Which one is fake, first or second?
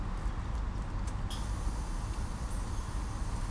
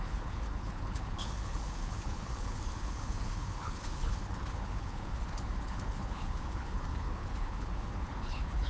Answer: second